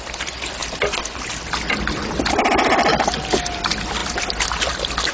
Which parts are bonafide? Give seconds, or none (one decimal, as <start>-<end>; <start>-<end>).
0.0-5.1